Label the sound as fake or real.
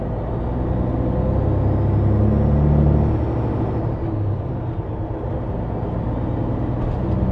real